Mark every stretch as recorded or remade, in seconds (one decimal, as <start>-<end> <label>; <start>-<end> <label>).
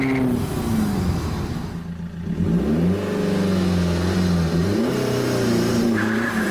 0.0-4.6 recorded; 4.6-6.5 remade